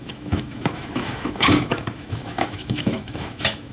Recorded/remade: remade